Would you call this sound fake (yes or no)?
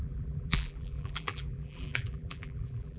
yes